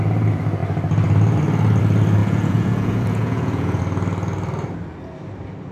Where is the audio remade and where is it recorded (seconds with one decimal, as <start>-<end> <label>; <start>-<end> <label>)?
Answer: 0.0-2.2 recorded; 2.2-3.8 remade; 3.8-5.7 recorded